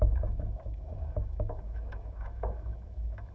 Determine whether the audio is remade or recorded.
remade